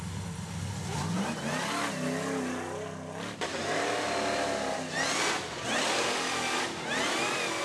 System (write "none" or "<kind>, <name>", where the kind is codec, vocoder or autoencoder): none